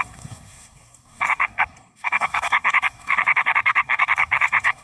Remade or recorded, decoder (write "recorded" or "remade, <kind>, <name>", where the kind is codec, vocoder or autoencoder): remade, codec, SNAC